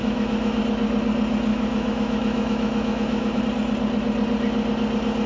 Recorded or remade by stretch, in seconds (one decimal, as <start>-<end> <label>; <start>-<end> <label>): 0.0-0.6 remade; 0.6-1.5 recorded; 1.5-3.4 remade; 3.4-5.3 recorded